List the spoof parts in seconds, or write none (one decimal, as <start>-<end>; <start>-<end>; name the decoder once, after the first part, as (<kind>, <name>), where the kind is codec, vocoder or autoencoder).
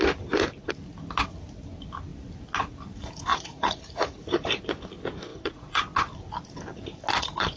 3.3-4.6 (vocoder, Vocos); 5.3-5.8